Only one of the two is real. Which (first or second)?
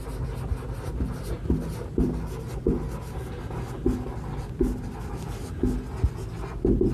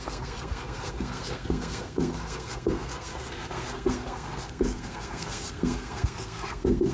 first